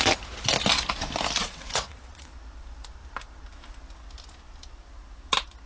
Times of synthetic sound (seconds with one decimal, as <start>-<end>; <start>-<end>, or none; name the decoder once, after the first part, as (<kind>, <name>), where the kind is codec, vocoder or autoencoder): 1.4-2.3 (vocoder, WaveNeXt)